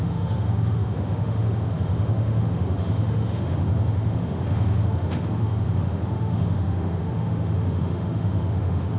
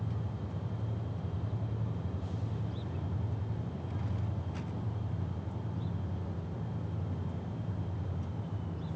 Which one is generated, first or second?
first